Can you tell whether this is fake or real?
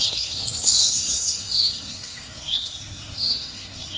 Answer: fake